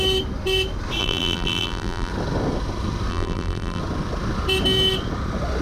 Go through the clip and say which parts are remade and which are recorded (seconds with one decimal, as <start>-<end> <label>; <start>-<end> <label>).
0.0-1.0 recorded; 1.0-2.1 remade; 2.1-3.1 recorded; 3.1-3.8 remade; 3.8-5.6 recorded